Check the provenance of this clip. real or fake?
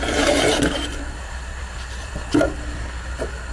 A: fake